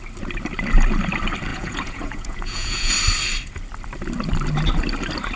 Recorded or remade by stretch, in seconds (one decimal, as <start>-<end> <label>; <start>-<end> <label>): 0.0-1.5 recorded; 1.5-2.9 remade; 2.9-5.4 recorded